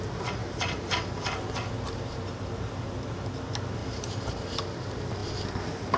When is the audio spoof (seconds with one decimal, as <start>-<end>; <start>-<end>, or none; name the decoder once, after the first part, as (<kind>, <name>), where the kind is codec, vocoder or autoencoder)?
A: 0.4-1.0 (vocoder, BigVGAN v2); 3.8-4.6